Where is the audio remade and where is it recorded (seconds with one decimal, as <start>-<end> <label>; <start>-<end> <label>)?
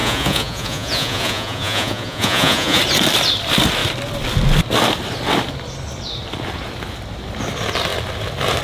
0.0-2.8 remade; 2.8-8.6 recorded